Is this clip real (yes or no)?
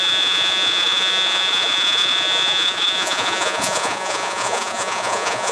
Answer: no